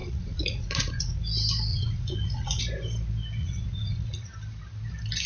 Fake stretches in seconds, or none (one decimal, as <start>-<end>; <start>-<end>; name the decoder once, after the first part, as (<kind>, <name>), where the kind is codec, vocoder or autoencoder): 0.0-1.2 (vocoder, Vocos); 1.7-2.6; 3.4-4.3